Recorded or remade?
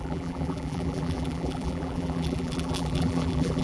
remade